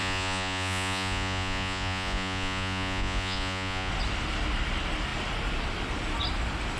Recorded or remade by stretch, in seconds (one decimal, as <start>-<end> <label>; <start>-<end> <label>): 0.0-3.9 remade; 3.9-6.8 recorded

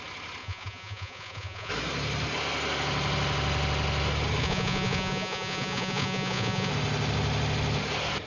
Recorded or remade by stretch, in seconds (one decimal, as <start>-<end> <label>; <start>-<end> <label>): 0.0-0.4 recorded; 0.4-1.7 remade; 1.7-4.4 recorded; 4.4-6.7 remade; 6.7-8.3 recorded

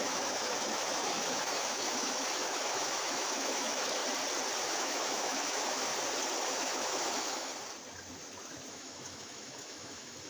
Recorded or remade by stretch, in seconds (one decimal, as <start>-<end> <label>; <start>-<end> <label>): 0.0-4.0 remade; 4.0-4.6 recorded; 4.6-5.9 remade; 5.9-6.5 recorded; 6.5-7.5 remade; 7.5-8.7 recorded; 8.7-10.3 remade

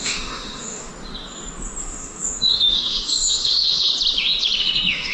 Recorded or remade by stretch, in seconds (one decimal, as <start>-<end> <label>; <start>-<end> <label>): 0.0-0.9 remade; 0.9-1.8 recorded; 1.8-3.9 remade; 3.9-4.6 recorded; 4.6-5.1 remade

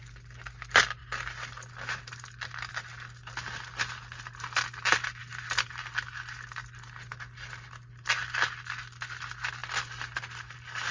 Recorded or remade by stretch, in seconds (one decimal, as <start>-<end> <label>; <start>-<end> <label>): 0.0-10.9 recorded

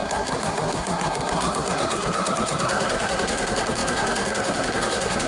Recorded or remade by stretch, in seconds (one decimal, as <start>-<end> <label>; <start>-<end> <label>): 0.0-5.3 remade